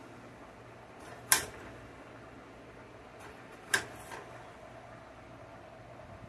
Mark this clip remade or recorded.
recorded